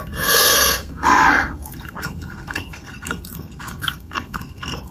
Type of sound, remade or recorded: remade